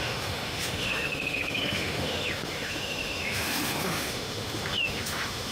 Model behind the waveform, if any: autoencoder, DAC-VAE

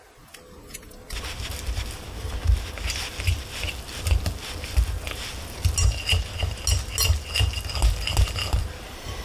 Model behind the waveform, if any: none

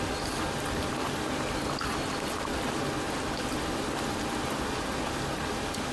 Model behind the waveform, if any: none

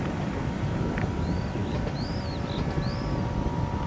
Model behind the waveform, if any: none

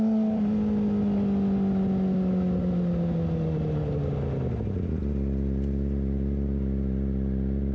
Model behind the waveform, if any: none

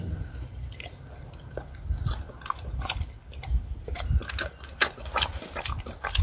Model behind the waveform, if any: none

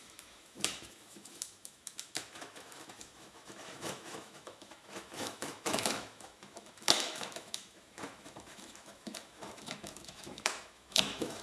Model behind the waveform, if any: autoencoder, DAC-VAE